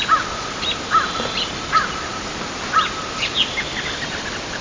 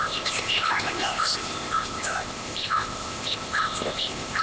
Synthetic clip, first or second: second